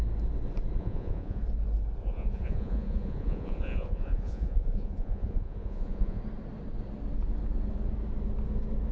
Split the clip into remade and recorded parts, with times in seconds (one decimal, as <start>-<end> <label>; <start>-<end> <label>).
0.0-0.8 recorded; 0.8-1.4 remade; 1.4-2.0 recorded; 2.0-6.2 remade; 6.2-8.9 recorded